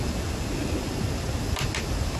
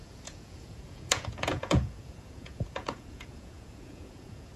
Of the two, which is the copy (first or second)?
second